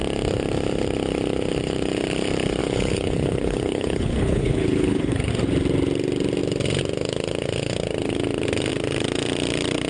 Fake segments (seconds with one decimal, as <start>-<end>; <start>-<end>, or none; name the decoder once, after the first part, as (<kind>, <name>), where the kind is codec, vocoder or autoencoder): 2.6-5.3 (codec, HILCodec)

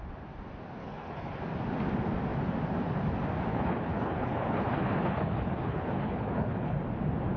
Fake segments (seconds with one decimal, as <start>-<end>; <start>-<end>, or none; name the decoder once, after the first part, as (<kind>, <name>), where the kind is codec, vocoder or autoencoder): 0.8-1.4 (codec, HILCodec); 3.5-6.8

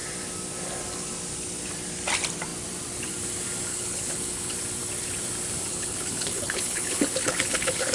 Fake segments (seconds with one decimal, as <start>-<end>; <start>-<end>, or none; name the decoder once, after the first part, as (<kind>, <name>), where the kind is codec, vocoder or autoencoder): 3.7-4.5 (codec, HILCodec); 5.7-7.9

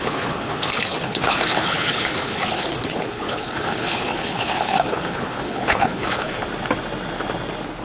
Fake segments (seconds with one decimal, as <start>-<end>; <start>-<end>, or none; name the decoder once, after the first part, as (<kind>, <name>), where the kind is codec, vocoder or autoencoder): 0.0-6.4 (codec, HILCodec)

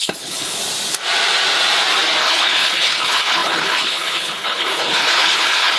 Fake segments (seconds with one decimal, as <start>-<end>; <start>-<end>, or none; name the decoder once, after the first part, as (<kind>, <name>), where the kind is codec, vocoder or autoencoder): 0.0-0.6 (codec, HILCodec); 2.2-5.8

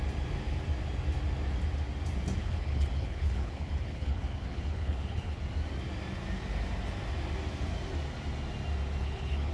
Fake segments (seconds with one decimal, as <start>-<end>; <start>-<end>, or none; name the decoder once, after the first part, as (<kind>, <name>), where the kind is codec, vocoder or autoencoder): 2.4-5.4 (codec, HILCodec); 9.0-9.5

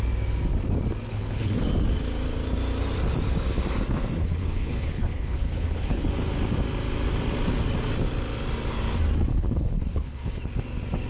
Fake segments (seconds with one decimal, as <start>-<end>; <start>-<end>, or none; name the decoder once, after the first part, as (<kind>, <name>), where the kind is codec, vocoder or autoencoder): 1.1-1.6 (codec, HILCodec); 4.2-6.1; 9.3-10.4

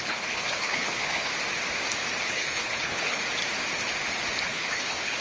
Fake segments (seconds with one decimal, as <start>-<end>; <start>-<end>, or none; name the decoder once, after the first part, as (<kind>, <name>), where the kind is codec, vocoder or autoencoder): 0.0-1.3 (codec, HILCodec); 2.2-3.2; 4.4-5.2